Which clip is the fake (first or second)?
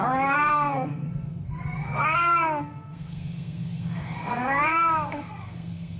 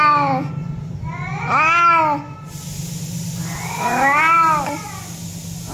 first